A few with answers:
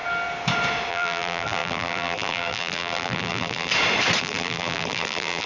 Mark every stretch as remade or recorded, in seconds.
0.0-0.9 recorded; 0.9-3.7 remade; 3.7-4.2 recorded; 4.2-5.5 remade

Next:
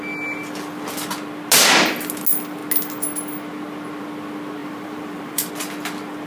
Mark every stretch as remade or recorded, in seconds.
0.0-4.6 recorded; 4.6-5.5 remade; 5.5-6.3 recorded

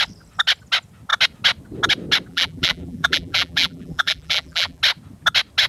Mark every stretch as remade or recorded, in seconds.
0.0-2.3 recorded; 2.3-4.8 remade; 4.8-5.7 recorded

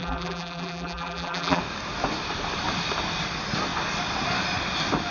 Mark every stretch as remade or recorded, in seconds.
0.0-1.6 remade; 1.6-5.1 recorded

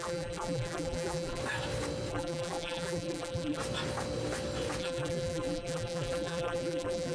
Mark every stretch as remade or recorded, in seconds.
0.0-1.4 remade; 1.4-2.1 recorded; 2.1-3.6 remade; 3.6-4.8 recorded; 4.8-7.1 remade